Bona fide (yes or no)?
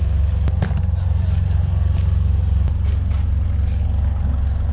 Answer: yes